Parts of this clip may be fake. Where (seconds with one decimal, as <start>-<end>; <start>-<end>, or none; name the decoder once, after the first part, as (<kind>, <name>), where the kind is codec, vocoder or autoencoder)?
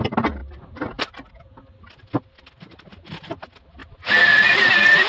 none